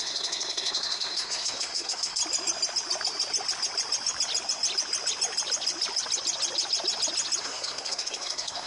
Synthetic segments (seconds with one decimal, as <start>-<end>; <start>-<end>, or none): 0.0-2.2; 7.4-8.7